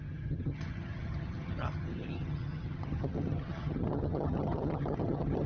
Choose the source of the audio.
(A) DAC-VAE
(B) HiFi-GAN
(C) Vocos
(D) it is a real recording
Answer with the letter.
B